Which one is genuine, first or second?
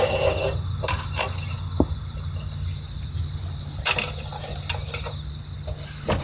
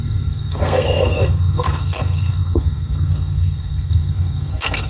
first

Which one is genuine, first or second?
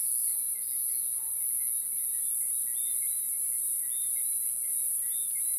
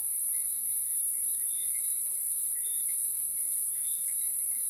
first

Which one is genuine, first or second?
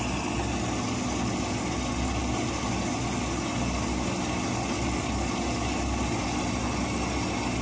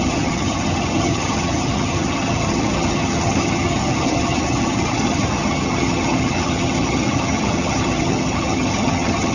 first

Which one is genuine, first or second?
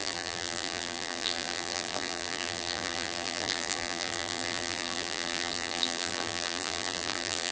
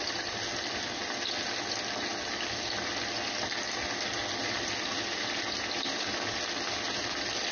second